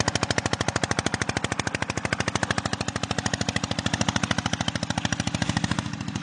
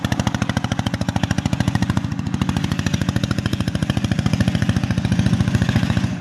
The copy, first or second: second